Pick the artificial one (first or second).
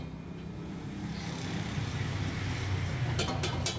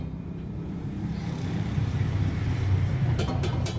second